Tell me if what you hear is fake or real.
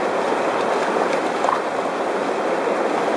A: real